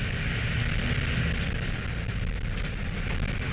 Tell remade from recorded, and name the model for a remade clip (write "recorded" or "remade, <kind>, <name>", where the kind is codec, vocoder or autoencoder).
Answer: recorded